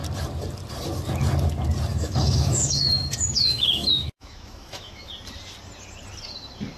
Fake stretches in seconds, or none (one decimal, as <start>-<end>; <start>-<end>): 1.9-5.1